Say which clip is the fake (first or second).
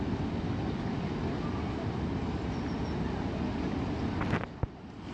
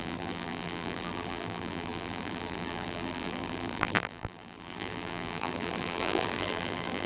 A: second